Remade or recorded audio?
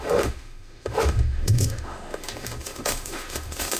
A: remade